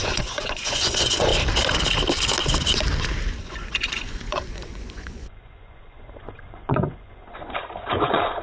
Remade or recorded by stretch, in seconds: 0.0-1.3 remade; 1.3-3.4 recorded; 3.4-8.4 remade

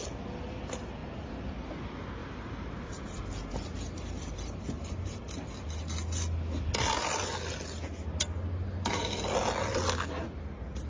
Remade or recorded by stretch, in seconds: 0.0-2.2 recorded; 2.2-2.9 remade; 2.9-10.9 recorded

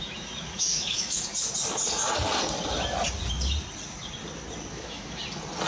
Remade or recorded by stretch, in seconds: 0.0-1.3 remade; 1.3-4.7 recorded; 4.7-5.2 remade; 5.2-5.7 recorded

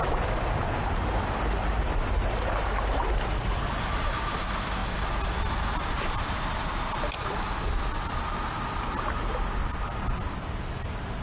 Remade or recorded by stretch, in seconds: 0.0-11.2 recorded

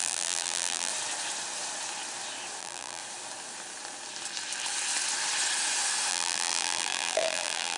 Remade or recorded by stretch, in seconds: 0.0-0.9 remade; 0.9-2.6 recorded; 2.6-3.0 remade; 3.0-6.1 recorded; 6.1-7.8 remade

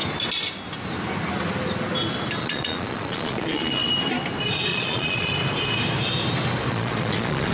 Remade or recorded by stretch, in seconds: 0.0-2.4 recorded; 2.4-3.9 remade; 3.9-4.7 recorded; 4.7-5.3 remade; 5.3-6.7 recorded; 6.7-7.5 remade